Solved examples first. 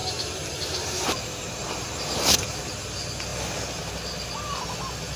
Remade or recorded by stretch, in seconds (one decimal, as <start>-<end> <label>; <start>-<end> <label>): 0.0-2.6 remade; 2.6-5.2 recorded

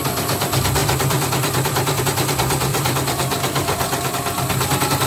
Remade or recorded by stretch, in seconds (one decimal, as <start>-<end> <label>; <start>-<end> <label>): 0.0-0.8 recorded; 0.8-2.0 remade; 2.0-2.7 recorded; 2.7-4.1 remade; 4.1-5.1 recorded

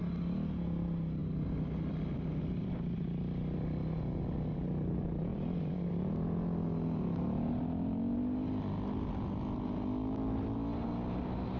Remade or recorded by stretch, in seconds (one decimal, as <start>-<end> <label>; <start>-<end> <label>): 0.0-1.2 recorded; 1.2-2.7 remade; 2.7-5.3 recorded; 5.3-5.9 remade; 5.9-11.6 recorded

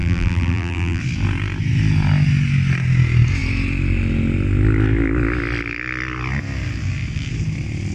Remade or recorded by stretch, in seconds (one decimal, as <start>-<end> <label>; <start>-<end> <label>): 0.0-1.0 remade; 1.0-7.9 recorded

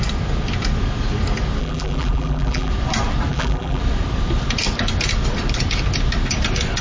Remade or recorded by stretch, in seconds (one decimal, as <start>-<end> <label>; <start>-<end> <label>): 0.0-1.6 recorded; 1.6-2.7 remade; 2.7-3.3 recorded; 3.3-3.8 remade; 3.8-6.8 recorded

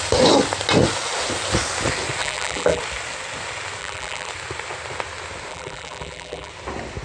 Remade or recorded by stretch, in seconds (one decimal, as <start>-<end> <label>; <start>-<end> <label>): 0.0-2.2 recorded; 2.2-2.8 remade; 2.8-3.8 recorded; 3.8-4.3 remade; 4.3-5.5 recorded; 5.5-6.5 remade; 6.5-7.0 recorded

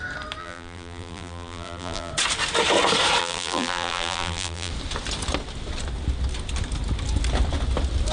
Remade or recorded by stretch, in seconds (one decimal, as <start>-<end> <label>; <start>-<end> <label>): 0.0-0.4 recorded; 0.4-2.1 remade; 2.1-3.2 recorded; 3.2-4.7 remade; 4.7-8.1 recorded

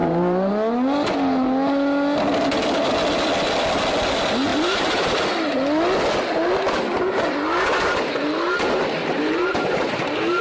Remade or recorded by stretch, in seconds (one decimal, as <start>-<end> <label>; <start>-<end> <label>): 0.0-0.5 remade; 0.5-4.5 recorded; 4.5-5.2 remade; 5.2-9.0 recorded; 9.0-9.9 remade; 9.9-10.4 recorded